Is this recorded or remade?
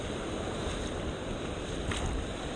recorded